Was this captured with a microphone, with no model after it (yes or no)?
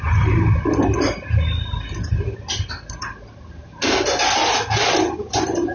yes